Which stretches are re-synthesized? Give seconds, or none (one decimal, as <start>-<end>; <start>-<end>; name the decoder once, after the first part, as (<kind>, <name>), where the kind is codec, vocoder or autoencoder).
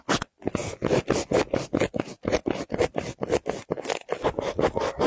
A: none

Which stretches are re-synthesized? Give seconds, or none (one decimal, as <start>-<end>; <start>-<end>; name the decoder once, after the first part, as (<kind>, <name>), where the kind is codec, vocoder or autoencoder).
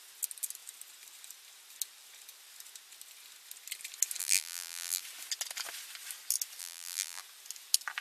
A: 4.2-5.0 (vocoder, BigVGAN v2); 6.6-7.2